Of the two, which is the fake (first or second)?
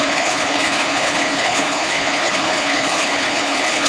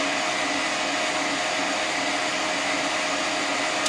first